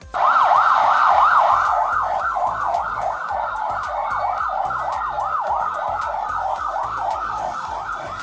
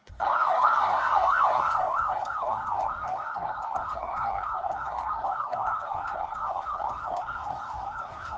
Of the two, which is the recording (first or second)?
first